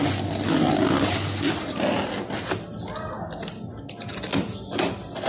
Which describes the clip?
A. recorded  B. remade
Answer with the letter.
A